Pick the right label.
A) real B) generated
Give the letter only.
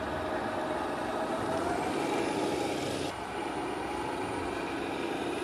A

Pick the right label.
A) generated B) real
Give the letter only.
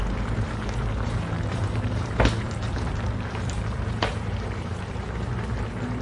A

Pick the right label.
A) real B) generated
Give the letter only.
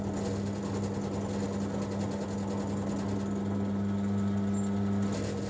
A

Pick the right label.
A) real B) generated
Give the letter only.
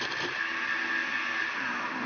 A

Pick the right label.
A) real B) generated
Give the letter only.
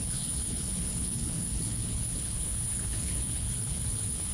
B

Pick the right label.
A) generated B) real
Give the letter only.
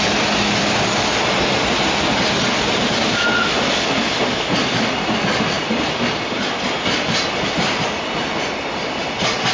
B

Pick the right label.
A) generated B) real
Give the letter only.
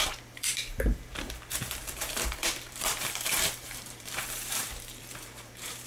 A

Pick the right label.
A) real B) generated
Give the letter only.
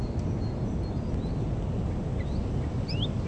A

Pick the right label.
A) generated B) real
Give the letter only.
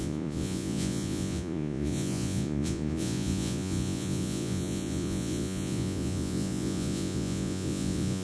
A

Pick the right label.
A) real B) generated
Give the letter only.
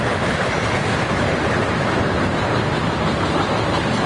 B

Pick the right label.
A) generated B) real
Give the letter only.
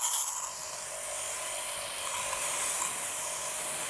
B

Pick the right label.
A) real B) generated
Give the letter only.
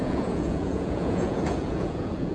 B